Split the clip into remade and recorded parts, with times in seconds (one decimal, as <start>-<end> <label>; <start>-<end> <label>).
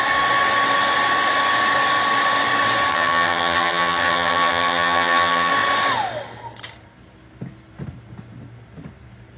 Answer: 0.0-2.9 recorded; 2.9-5.5 remade; 5.5-9.4 recorded